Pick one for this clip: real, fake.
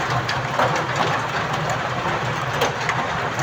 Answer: real